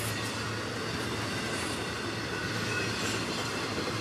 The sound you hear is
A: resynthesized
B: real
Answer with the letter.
B